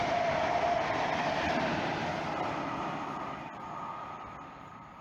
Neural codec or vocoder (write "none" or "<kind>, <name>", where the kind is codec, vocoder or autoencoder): vocoder, BigVGAN v2